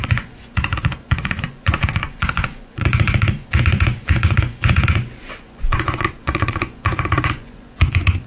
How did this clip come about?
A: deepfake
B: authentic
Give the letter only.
A